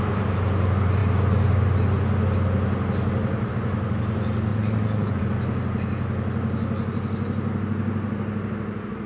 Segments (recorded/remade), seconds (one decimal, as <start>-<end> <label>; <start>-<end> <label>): 0.0-4.5 recorded; 4.5-5.2 remade; 5.2-9.1 recorded

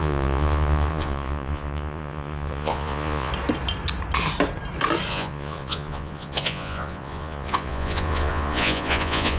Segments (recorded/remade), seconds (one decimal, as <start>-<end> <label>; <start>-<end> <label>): 0.0-3.3 remade; 3.3-5.1 recorded; 5.1-9.4 remade

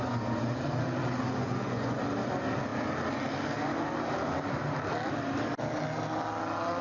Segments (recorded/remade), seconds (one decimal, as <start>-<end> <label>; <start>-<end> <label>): 0.0-1.4 recorded; 1.4-2.0 remade; 2.0-6.8 recorded

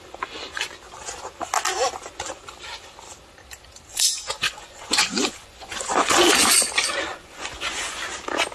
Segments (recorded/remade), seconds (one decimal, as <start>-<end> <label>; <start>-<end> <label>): 0.0-3.9 recorded; 3.9-6.3 remade; 6.3-7.1 recorded; 7.1-8.0 remade; 8.0-8.5 recorded

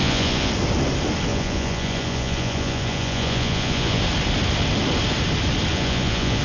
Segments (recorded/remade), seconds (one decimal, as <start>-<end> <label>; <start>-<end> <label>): 0.0-0.5 remade; 0.5-1.3 recorded; 1.3-4.0 remade; 4.0-5.7 recorded; 5.7-6.4 remade

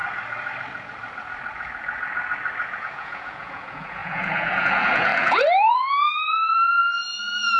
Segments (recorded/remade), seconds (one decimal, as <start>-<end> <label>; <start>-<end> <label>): 0.0-2.8 recorded; 2.8-7.6 remade

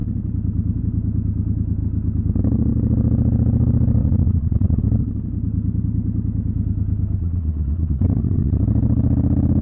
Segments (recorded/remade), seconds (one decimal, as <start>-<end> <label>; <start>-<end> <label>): 0.0-4.0 recorded; 4.0-4.8 remade; 4.8-7.2 recorded; 7.2-8.6 remade; 8.6-9.6 recorded

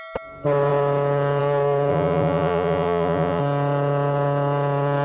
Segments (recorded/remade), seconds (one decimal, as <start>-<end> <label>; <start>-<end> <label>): 0.0-1.9 recorded; 1.9-3.4 remade; 3.4-5.0 recorded